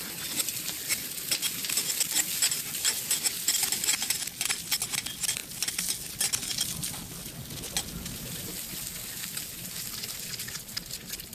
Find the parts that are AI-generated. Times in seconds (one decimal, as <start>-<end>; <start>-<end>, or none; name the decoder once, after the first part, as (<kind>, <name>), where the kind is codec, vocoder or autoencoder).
none

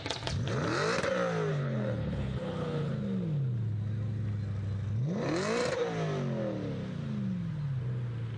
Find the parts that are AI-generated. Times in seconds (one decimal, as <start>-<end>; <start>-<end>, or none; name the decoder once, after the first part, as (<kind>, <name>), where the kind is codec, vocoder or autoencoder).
1.5-2.9 (codec, HILCodec)

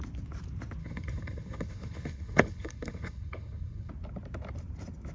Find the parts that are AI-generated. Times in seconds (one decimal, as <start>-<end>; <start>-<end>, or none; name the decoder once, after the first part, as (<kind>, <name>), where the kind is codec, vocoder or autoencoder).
0.8-3.9 (codec, HILCodec)

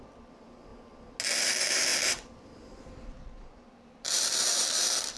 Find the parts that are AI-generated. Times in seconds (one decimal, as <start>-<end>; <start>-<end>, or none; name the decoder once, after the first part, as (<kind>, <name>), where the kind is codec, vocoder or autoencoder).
0.0-0.7 (vocoder, BigVGAN v2); 1.4-5.2

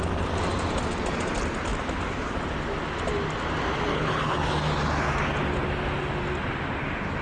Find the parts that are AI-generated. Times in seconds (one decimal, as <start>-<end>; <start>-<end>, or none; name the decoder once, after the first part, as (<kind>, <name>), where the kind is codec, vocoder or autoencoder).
3.9-4.5 (codec, HILCodec)